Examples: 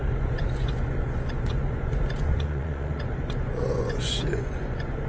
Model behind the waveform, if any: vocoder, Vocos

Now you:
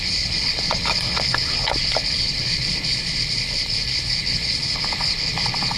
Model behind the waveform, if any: codec, HILCodec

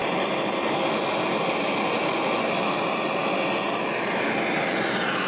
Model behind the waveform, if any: none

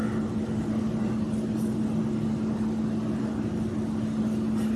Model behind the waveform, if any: none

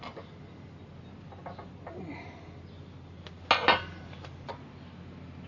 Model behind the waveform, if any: none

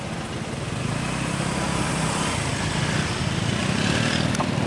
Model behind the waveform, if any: none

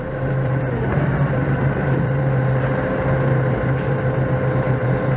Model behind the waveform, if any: vocoder, BigVGAN v2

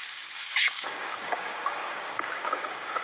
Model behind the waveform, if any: codec, DAC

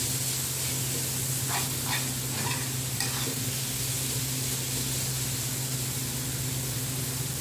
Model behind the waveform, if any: none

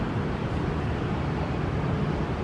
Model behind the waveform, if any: none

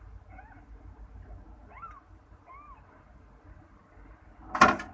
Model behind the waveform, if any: none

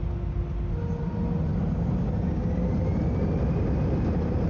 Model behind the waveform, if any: none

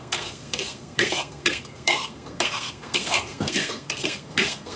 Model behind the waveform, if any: codec, SNAC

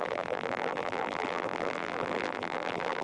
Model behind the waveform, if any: vocoder, BigVGAN v2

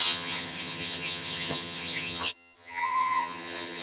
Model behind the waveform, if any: vocoder, HiFi-GAN